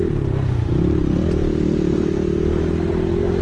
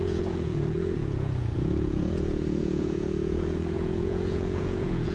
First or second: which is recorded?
first